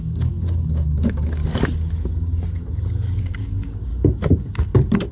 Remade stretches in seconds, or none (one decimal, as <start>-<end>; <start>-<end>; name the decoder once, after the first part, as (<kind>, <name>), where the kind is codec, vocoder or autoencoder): 0.0-1.4 (codec, DAC); 3.2-3.9